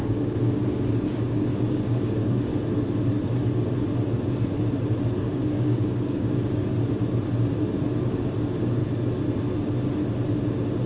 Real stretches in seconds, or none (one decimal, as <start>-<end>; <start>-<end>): 2.5-5.2; 6.7-8.1; 8.8-10.9